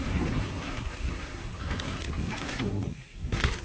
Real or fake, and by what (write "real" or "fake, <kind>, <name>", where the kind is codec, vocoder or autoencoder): fake, codec, SNAC